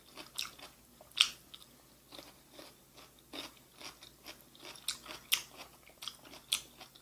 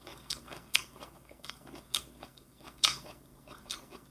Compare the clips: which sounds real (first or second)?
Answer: first